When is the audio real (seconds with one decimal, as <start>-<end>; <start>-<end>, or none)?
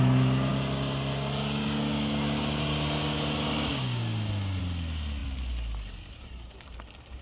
0.0-7.2